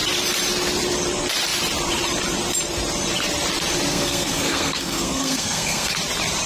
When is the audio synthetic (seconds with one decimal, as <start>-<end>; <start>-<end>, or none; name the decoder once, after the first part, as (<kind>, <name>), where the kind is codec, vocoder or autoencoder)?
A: 3.9-5.9 (codec, SNAC)